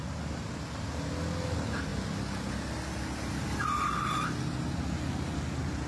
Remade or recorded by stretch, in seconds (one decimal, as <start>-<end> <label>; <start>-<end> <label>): 0.0-5.9 recorded

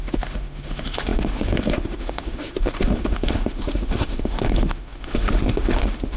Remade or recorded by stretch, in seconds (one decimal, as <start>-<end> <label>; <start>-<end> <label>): 0.0-6.2 remade

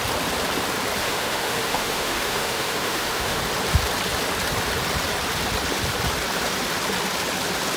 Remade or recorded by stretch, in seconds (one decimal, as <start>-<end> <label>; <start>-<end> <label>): 0.0-1.0 recorded; 1.0-3.4 remade; 3.4-7.8 recorded

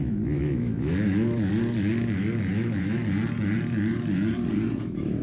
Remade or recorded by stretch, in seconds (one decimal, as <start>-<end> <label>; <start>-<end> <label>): 0.0-1.5 remade; 1.5-2.5 recorded; 2.5-3.0 remade; 3.0-4.8 recorded; 4.8-5.2 remade

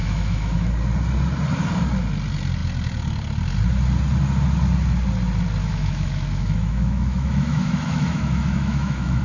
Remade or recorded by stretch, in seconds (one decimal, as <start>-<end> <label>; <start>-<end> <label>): 0.0-0.7 remade; 0.7-5.6 recorded; 5.6-9.2 remade

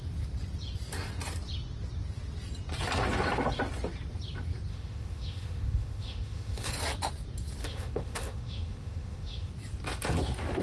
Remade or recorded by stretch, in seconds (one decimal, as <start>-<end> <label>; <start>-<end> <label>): 0.0-4.7 recorded; 4.7-6.7 remade; 6.7-7.6 recorded; 7.6-9.5 remade; 9.5-10.6 recorded

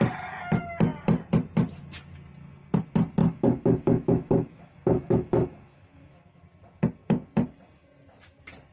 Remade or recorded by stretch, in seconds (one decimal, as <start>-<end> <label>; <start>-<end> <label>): 0.0-3.2 recorded; 3.2-6.4 remade; 6.4-8.7 recorded

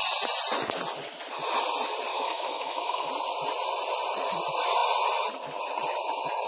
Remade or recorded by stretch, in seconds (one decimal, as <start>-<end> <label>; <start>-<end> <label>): 0.0-2.1 recorded; 2.1-3.1 remade; 3.1-6.5 recorded